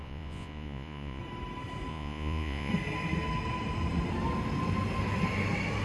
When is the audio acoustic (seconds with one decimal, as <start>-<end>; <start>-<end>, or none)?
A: 1.2-1.9; 2.7-5.8